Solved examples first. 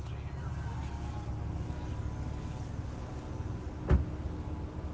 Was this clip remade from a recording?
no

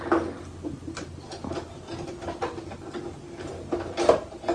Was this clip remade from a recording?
no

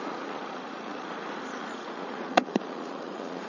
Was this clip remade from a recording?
yes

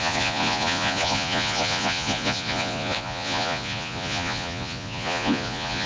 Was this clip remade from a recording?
yes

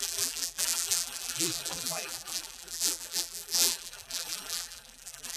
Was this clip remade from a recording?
yes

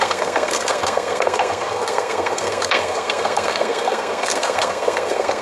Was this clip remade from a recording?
yes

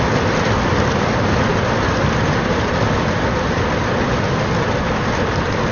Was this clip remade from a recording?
no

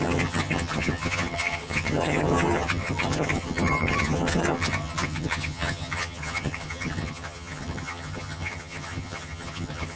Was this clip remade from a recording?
yes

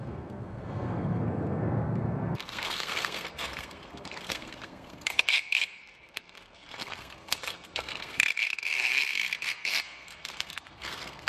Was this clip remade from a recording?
yes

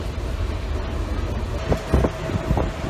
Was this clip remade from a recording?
no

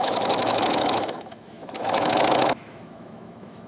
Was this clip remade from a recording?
yes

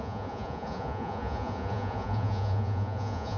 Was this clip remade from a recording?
yes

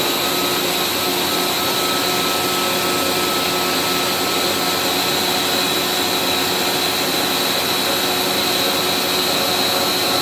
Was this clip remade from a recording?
no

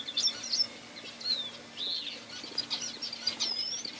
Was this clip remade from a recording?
no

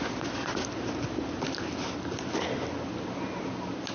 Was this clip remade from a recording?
no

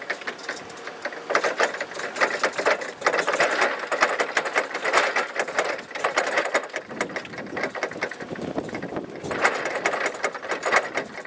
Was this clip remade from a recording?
no